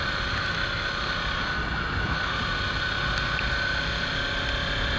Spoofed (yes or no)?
no